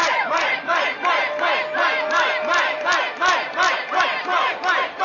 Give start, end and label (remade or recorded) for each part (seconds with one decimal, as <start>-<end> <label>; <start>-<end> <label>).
0.0-1.0 remade; 1.0-5.0 recorded